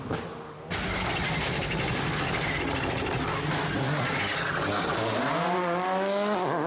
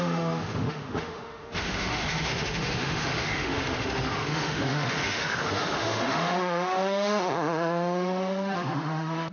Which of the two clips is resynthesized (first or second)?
second